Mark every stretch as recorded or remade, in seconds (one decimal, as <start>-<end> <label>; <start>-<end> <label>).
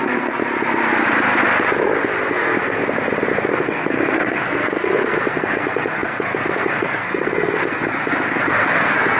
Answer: 0.0-0.4 remade; 0.4-2.3 recorded; 2.3-2.8 remade; 2.8-3.5 recorded; 3.5-9.2 remade